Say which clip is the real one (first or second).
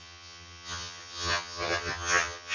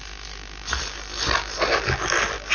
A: second